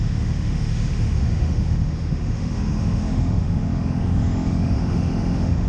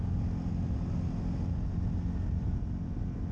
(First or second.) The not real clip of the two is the first